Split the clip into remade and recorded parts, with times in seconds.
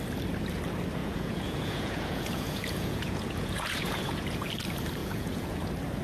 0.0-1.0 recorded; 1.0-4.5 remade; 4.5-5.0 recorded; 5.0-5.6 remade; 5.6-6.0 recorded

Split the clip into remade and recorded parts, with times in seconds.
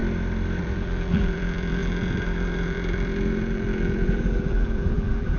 0.0-0.6 recorded; 0.6-5.4 remade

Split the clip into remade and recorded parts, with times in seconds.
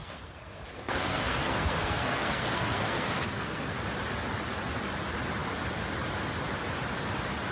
0.0-3.8 remade; 3.8-7.5 recorded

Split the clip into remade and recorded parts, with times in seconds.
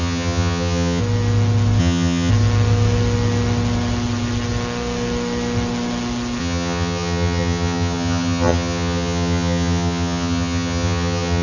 0.0-1.0 remade; 1.0-1.8 recorded; 1.8-2.3 remade; 2.3-6.4 recorded; 6.4-11.4 remade